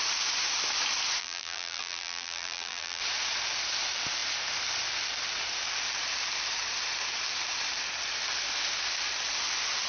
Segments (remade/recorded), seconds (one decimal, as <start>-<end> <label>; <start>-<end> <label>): 0.0-1.2 recorded; 1.2-3.0 remade; 3.0-9.9 recorded